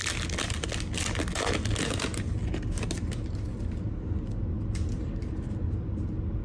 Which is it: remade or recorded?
recorded